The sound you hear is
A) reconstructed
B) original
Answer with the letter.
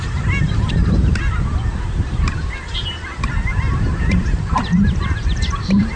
A